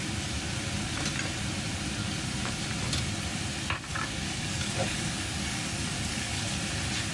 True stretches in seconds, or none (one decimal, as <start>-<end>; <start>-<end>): 0.0-2.0; 2.6-3.9; 6.4-7.1